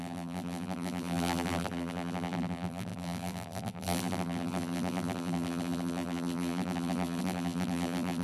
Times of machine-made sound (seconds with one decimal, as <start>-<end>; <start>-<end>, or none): 0.0-8.2